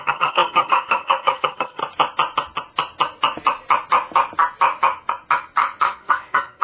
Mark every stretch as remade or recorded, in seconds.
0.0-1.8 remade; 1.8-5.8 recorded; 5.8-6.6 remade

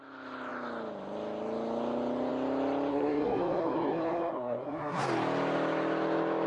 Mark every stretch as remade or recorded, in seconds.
0.0-2.9 recorded; 2.9-5.0 remade; 5.0-6.5 recorded

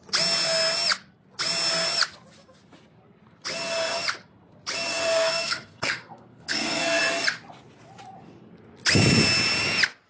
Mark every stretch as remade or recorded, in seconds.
0.0-4.9 recorded; 4.9-7.0 remade; 7.0-10.1 recorded